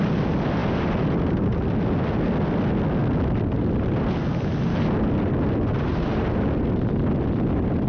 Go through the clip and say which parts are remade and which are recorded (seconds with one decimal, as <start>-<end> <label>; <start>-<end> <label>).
0.0-7.9 recorded